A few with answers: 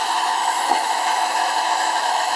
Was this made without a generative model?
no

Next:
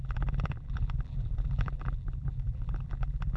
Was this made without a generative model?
no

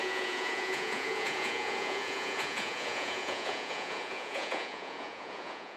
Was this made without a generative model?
no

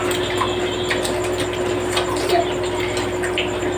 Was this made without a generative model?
yes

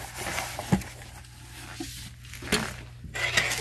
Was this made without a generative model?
yes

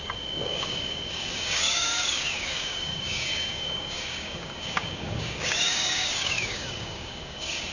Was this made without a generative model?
no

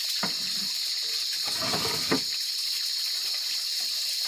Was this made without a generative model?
yes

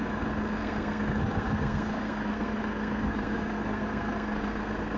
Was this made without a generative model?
no